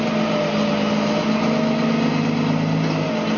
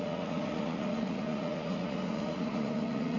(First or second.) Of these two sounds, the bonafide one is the first